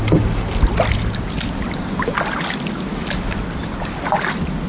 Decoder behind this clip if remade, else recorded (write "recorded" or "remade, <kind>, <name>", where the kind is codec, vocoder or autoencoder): recorded